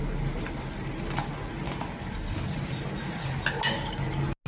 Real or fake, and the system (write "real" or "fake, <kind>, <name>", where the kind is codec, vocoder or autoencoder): real